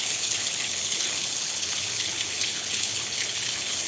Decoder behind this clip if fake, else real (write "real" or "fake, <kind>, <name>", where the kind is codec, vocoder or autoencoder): fake, codec, HILCodec